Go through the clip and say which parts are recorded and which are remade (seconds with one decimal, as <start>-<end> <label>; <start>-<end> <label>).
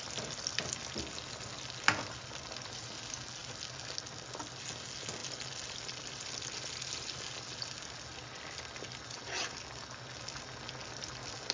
0.0-11.5 recorded